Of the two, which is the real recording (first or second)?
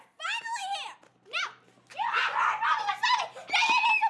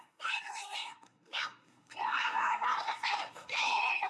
first